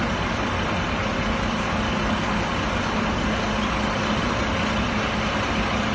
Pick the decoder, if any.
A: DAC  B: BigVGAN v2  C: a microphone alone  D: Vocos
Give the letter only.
C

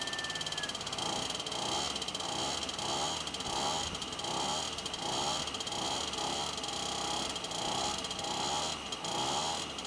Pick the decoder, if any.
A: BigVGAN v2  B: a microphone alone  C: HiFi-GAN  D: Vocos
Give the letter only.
B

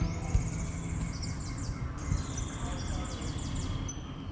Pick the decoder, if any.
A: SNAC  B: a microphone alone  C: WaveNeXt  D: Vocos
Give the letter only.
B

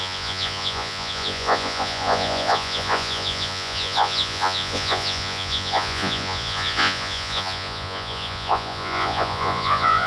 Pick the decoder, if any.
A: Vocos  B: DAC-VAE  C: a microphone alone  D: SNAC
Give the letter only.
A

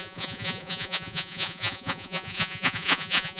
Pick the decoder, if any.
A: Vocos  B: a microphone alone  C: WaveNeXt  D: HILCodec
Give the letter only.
A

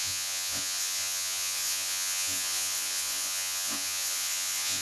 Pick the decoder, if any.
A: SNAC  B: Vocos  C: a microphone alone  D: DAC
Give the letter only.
B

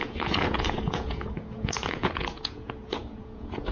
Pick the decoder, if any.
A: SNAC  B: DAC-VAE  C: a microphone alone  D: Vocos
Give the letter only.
D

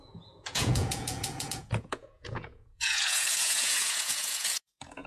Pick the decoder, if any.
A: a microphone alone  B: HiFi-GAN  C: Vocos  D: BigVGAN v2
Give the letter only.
C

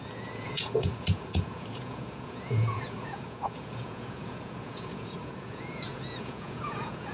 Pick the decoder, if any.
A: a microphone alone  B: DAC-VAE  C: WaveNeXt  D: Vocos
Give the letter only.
D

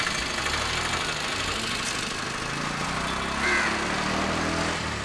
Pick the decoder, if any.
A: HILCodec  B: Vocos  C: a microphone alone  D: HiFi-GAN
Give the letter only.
C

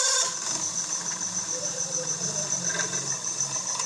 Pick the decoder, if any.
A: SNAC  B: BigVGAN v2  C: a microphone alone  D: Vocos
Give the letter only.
C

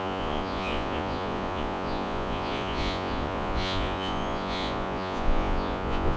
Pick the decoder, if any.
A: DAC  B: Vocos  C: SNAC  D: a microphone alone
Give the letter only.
B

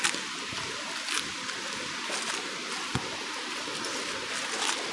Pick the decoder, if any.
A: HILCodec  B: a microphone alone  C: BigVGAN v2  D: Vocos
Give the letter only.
B